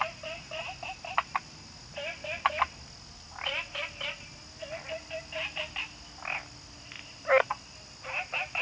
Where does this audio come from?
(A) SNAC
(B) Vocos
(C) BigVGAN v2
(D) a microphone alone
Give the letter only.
D